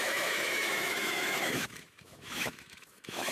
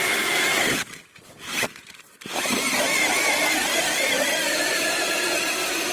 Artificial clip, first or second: first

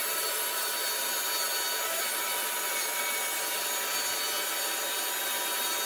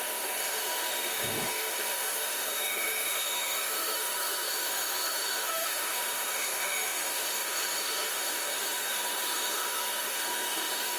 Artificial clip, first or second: second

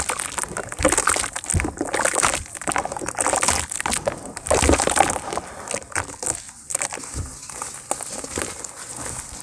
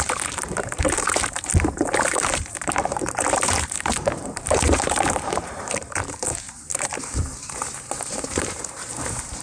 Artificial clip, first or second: second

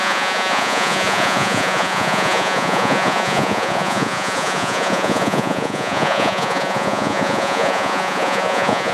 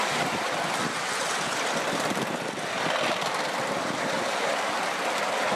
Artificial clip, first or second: first